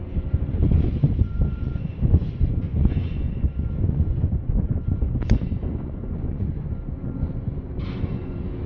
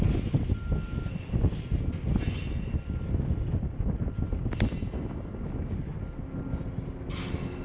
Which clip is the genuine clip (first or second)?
second